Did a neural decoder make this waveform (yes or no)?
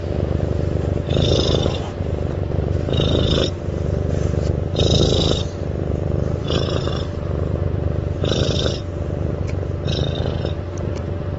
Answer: yes